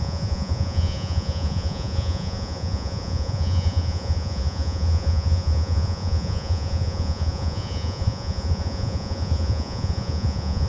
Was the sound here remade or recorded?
remade